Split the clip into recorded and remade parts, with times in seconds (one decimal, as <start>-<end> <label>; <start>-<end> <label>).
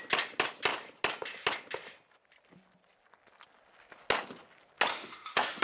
0.0-4.9 recorded; 4.9-5.6 remade